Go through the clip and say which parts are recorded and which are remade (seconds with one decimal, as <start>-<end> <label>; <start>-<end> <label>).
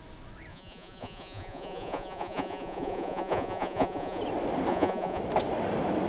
0.0-0.5 recorded; 0.5-4.2 remade; 4.2-4.7 recorded; 4.7-5.2 remade; 5.2-6.1 recorded